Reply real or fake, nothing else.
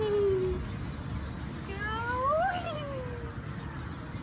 real